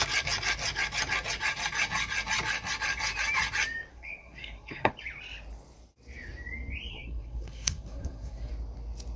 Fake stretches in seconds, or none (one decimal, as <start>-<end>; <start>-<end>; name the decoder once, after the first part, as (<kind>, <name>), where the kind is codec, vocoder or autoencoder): 3.9-4.9 (codec, SNAC); 6.9-8.5